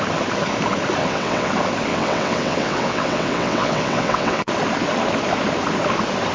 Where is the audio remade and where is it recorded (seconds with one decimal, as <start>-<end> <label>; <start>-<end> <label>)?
0.0-1.0 recorded; 1.0-1.5 remade; 1.5-1.9 recorded; 1.9-4.5 remade; 4.5-6.3 recorded